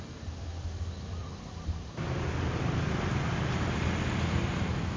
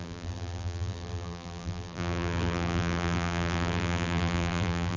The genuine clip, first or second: first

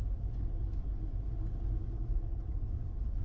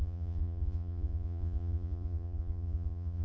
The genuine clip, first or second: first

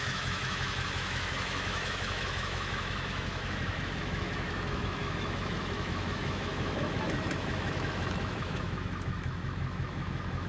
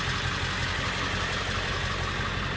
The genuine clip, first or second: second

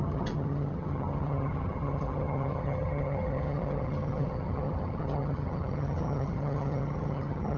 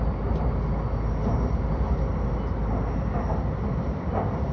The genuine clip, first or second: second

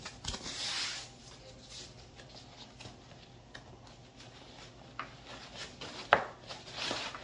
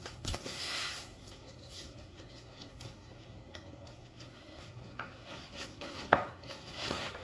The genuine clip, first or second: first